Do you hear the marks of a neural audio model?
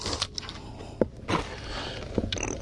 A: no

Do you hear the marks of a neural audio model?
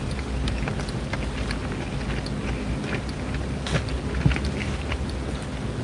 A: no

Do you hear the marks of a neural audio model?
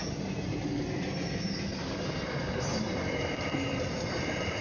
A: no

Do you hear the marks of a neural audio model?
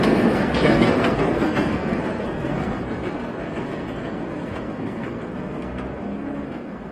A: yes